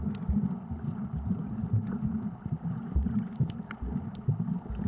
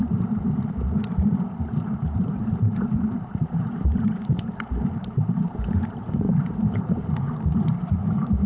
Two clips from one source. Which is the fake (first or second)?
second